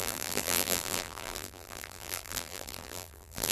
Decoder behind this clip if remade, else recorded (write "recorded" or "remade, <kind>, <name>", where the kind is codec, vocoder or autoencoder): remade, vocoder, BigVGAN v2